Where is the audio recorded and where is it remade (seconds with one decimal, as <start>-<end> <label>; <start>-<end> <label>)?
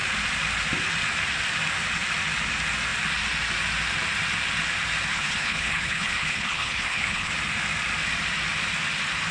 0.0-5.1 recorded; 5.1-7.3 remade; 7.3-9.3 recorded